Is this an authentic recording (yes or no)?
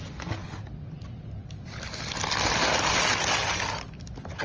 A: yes